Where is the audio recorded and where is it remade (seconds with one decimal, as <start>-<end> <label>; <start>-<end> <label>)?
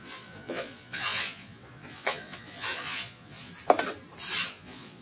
0.0-3.5 remade; 3.5-4.5 recorded; 4.5-5.0 remade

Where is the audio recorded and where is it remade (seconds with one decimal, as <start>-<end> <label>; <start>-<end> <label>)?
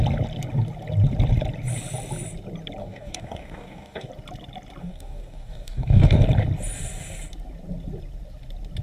0.0-2.8 recorded; 2.8-4.1 remade; 4.1-4.8 recorded; 4.8-6.2 remade; 6.2-8.8 recorded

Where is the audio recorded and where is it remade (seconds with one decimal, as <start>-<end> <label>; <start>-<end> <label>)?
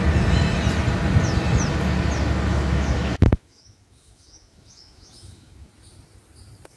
0.0-2.5 recorded; 2.5-5.7 remade; 5.7-6.8 recorded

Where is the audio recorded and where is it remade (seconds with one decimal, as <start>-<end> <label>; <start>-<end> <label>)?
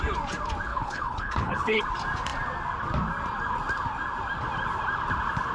0.0-0.7 recorded; 0.7-1.8 remade; 1.8-5.5 recorded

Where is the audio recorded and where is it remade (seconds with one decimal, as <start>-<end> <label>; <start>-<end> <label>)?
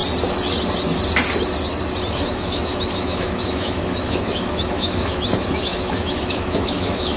0.0-2.1 recorded; 2.1-7.2 remade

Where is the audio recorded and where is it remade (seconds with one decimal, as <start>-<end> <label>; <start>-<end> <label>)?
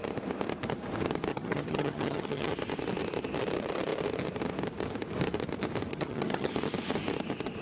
0.0-1.3 recorded; 1.3-2.5 remade; 2.5-5.9 recorded; 5.9-6.5 remade; 6.5-7.6 recorded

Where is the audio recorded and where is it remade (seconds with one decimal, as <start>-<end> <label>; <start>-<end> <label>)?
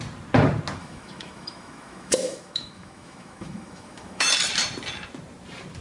0.0-0.8 recorded; 0.8-4.3 remade; 4.3-5.8 recorded